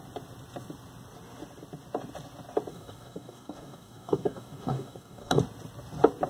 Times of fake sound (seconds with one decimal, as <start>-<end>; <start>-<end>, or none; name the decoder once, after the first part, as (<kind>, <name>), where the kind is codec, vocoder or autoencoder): 2.7-5.4 (codec, DAC)